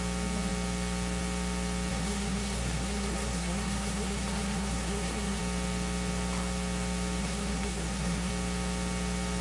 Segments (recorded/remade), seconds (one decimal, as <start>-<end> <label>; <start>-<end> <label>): 0.0-1.9 recorded; 1.9-5.4 remade; 5.4-7.2 recorded; 7.2-8.3 remade; 8.3-9.4 recorded